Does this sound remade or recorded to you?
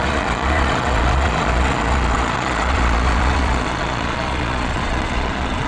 remade